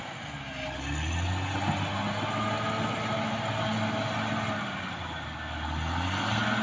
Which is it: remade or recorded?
recorded